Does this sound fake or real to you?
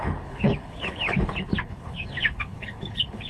fake